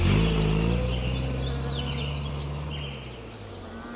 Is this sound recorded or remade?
recorded